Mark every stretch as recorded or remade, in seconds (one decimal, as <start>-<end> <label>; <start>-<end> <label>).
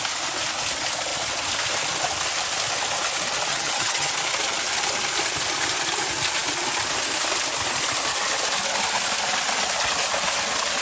0.0-3.5 recorded; 3.5-4.1 remade; 4.1-10.8 recorded